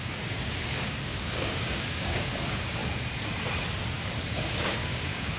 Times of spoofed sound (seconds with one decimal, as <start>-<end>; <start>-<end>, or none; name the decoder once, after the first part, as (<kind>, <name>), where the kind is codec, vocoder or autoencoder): 0.0-2.8 (codec, DAC); 4.3-5.4